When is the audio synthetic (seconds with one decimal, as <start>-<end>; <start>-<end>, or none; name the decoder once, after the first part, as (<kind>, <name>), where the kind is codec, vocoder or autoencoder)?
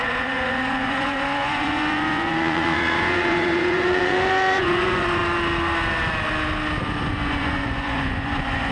0.0-5.2 (vocoder, Vocos); 7.1-8.7